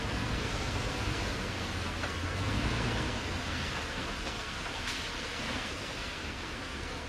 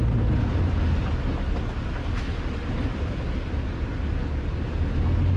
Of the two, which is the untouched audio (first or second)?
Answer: second